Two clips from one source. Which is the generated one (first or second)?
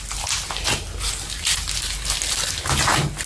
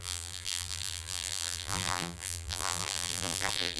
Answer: second